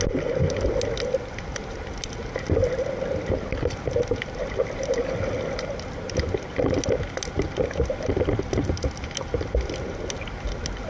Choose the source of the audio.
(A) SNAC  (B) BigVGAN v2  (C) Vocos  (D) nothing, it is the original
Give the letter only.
D